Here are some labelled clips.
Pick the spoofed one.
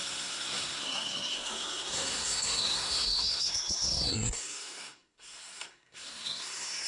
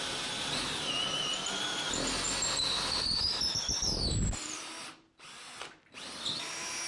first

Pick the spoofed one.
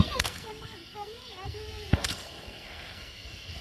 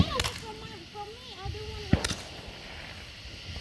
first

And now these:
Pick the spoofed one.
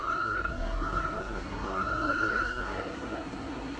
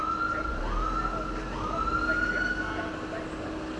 first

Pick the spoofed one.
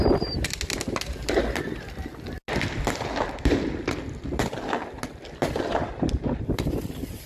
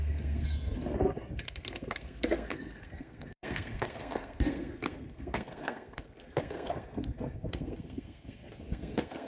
second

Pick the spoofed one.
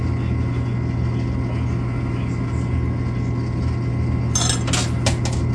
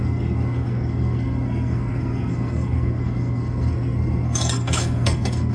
second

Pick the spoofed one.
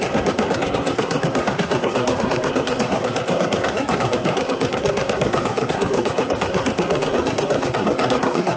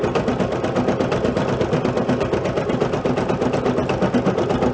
first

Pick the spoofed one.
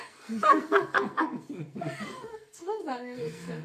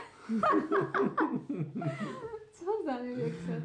first